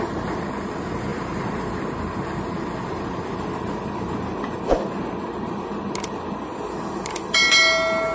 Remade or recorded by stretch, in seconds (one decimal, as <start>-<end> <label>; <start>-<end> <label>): 0.0-8.1 recorded